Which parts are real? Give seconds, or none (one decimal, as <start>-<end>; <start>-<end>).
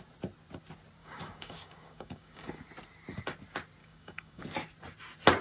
0.0-1.0; 2.6-3.8; 4.4-5.4